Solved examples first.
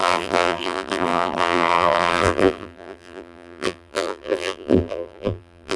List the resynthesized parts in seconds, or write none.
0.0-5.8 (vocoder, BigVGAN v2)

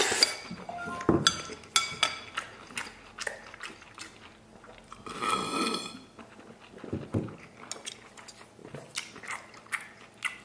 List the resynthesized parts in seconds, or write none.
4.5-5.3 (vocoder, BigVGAN v2)

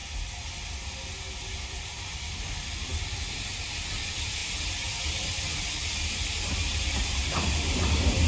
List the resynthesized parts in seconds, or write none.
1.1-4.4 (vocoder, BigVGAN v2)

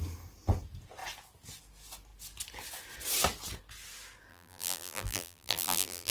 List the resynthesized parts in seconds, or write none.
4.3-6.1 (vocoder, BigVGAN v2)

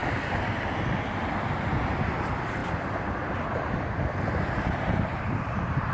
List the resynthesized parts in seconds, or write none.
1.3-5.9 (vocoder, BigVGAN v2)

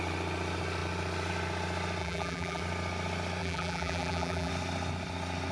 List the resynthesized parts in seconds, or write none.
2.0-2.6 (vocoder, BigVGAN v2); 3.4-4.5

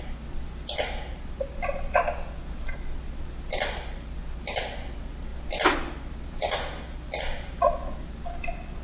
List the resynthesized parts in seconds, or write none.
none